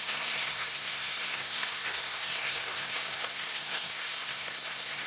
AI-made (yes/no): yes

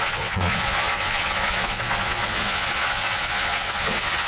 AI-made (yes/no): yes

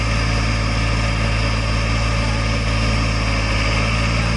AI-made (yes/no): no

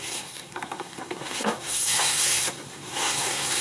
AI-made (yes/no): yes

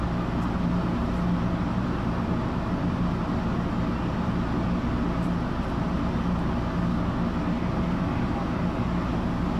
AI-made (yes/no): no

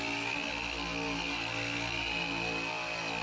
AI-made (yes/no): no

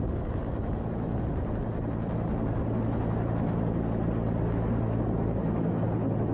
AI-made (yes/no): no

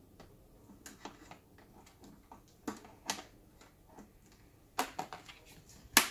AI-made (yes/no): no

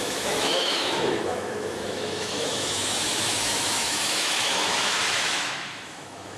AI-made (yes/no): yes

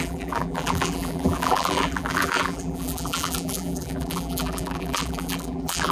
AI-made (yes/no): yes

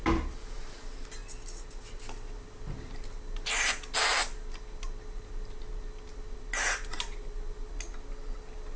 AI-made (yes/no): no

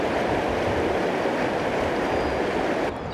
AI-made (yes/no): no